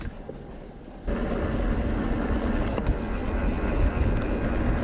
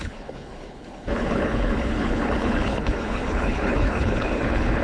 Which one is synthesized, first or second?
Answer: second